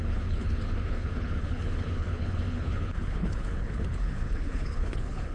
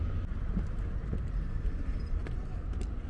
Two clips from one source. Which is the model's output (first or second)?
first